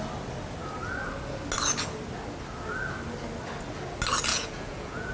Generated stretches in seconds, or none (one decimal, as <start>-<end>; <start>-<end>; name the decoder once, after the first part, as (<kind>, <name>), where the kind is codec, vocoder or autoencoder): 4.3-5.1 (vocoder, Vocos)